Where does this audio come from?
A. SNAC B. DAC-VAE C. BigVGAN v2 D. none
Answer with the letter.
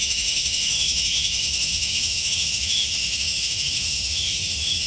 B